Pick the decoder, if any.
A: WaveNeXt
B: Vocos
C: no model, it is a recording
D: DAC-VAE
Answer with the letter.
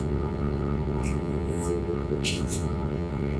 A